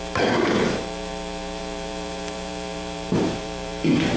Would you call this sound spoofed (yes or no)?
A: yes